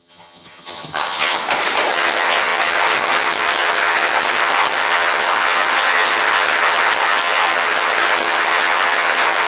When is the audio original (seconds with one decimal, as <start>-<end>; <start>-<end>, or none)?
1.4-1.9